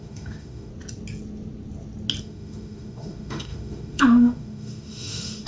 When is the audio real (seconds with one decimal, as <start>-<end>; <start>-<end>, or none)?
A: 0.7-2.2